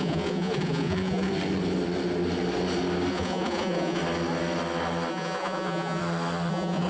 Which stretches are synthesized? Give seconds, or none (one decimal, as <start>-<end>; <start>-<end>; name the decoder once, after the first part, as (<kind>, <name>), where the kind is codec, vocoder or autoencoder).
0.0-1.3 (vocoder, Vocos); 3.1-4.0; 5.1-6.0; 6.5-6.9